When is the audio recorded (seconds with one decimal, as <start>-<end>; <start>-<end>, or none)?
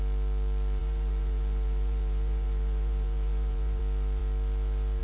0.0-0.8; 3.8-5.0